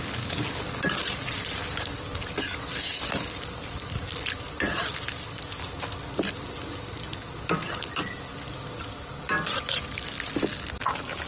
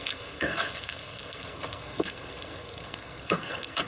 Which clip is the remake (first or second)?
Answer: second